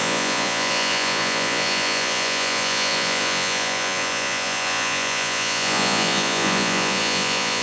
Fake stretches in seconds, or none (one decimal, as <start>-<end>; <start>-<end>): 0.0-7.6